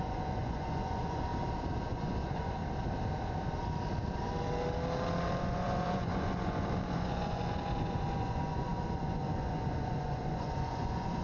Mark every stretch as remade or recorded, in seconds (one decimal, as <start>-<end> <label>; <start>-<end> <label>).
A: 0.0-1.3 remade; 1.3-1.9 recorded; 1.9-2.6 remade; 2.6-5.4 recorded; 5.4-11.2 remade